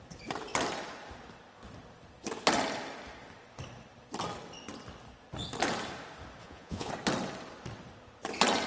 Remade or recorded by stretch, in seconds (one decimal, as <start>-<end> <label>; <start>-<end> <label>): 0.0-6.4 recorded; 6.4-6.9 remade; 6.9-8.7 recorded